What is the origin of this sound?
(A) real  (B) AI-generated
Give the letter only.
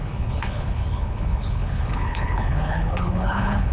B